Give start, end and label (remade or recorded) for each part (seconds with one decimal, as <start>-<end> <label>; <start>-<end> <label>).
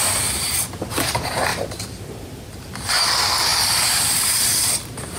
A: 0.0-5.2 recorded